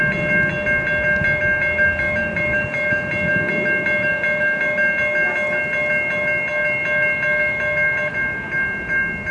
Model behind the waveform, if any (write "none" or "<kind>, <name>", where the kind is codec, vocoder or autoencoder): none